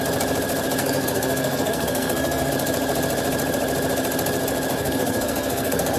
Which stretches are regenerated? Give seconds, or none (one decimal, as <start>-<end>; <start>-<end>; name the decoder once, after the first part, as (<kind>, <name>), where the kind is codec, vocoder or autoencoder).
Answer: 0.8-2.5 (codec, SNAC); 4.7-6.0

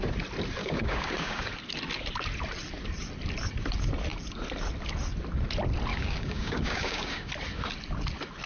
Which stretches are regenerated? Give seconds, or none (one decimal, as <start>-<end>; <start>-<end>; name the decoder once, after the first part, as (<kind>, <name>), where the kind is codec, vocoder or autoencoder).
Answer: 0.6-1.5 (codec, DAC); 5.9-7.3

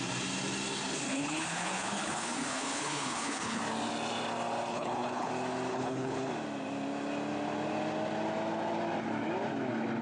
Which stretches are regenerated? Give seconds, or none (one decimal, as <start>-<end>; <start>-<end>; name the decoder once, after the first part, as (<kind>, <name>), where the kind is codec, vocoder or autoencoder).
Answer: 1.1-3.6 (codec, HILCodec); 4.7-5.3; 5.7-6.3